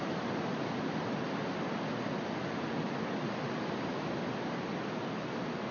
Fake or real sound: real